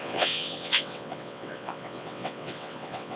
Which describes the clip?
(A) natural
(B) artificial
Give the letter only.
B